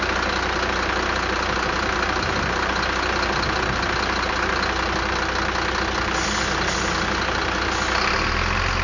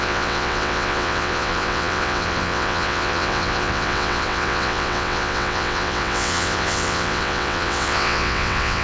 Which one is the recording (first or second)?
first